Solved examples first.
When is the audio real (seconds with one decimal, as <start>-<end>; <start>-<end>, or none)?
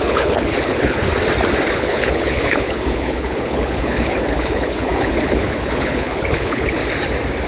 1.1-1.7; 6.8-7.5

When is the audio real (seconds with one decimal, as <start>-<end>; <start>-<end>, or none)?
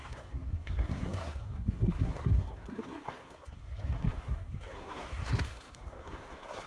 none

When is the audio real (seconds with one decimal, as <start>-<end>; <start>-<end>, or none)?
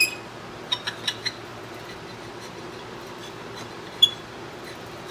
0.0-5.1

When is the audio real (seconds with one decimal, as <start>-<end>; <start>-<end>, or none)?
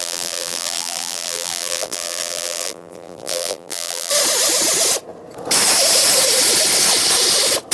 4.1-7.7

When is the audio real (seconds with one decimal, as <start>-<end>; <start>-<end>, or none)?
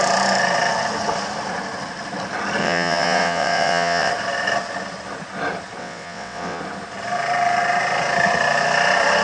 0.0-2.6; 4.1-5.8; 6.6-9.2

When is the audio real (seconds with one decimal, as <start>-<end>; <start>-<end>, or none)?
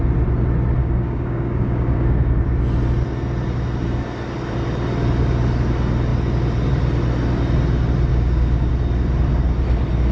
0.0-0.8; 2.4-8.1; 8.7-10.1